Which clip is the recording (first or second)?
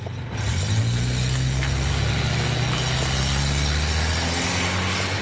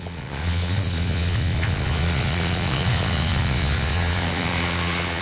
first